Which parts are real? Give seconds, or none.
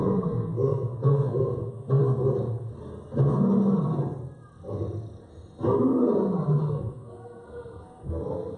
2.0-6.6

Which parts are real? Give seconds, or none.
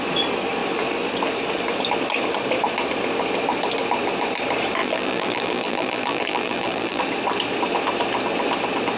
0.0-4.8; 7.0-9.0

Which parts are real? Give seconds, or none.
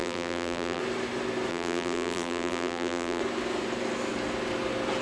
0.8-1.5; 3.2-5.0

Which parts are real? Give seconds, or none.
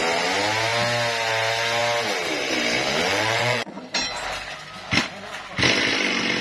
0.0-3.1; 3.8-6.4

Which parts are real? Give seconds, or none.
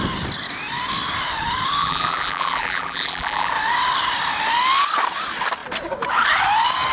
0.0-1.8; 3.5-6.9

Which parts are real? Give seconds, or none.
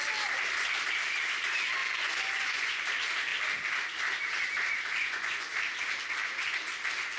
0.0-1.8; 2.8-5.0; 5.5-7.2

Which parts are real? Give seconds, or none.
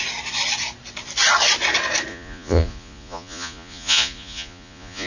0.0-2.1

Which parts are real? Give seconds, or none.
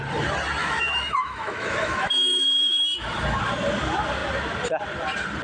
0.0-0.6; 3.4-5.4